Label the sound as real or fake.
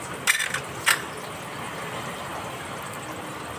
real